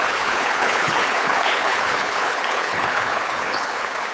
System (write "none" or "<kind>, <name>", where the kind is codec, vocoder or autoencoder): codec, HILCodec